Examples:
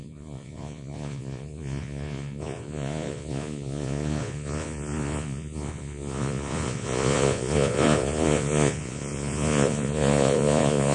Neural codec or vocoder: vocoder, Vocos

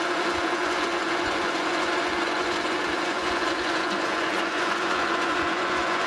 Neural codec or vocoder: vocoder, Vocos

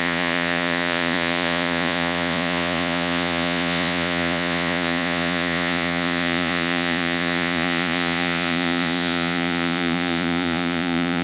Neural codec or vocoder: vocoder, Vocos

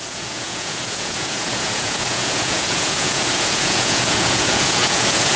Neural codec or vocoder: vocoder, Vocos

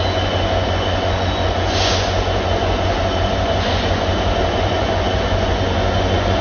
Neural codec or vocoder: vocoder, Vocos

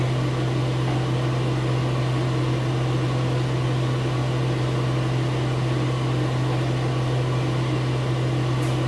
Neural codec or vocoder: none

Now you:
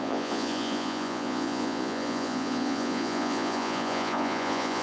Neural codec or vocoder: vocoder, Vocos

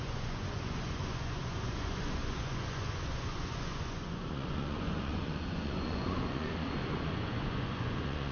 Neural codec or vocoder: vocoder, Vocos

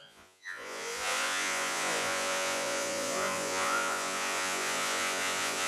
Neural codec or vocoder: vocoder, Vocos